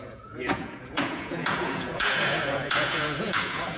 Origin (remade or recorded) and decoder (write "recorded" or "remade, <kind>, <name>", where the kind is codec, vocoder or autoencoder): remade, vocoder, Vocos